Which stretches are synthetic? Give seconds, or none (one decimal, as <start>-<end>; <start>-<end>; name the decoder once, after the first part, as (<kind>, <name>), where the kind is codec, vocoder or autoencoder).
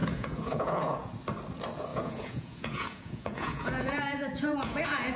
0.0-1.1 (vocoder, Vocos); 1.9-5.2